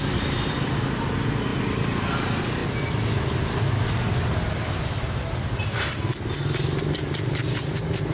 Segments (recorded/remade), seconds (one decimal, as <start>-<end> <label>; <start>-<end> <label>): 0.0-2.6 remade; 2.6-6.8 recorded; 6.8-8.1 remade